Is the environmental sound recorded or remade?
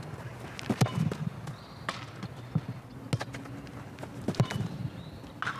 recorded